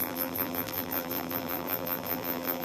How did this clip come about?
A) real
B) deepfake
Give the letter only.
B